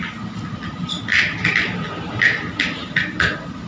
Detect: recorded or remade recorded